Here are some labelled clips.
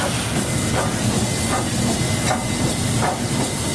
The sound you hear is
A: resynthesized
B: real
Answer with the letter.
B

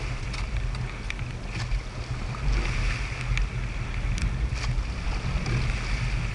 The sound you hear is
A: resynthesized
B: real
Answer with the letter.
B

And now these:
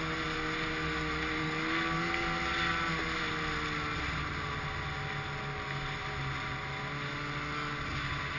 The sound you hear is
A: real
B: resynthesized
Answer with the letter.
A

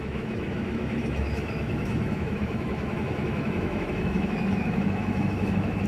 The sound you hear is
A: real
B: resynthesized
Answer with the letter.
B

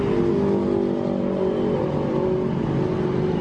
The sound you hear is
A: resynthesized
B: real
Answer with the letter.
B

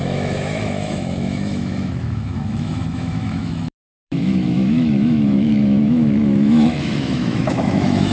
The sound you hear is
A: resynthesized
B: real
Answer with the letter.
A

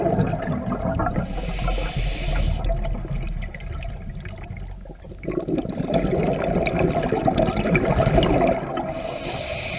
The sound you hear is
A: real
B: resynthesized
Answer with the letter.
A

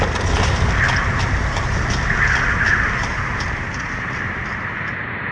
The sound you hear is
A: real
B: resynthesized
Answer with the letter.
A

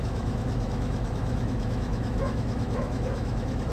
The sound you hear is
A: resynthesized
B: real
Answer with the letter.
A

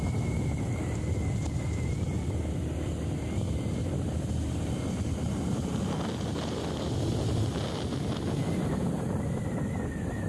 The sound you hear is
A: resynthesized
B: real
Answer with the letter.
B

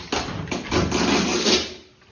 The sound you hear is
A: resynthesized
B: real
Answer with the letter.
B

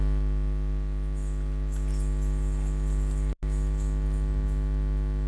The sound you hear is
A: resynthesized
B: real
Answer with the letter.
B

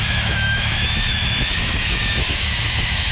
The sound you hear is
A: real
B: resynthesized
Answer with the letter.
B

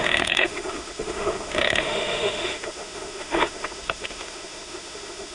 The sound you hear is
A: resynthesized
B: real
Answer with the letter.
A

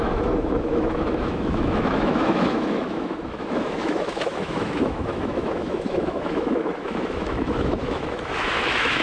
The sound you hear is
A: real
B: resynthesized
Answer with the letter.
B